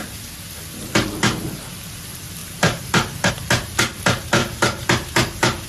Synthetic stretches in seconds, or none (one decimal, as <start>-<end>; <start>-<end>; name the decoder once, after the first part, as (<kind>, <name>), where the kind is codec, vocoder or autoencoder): 2.4-3.3 (vocoder, BigVGAN v2); 4.4-5.7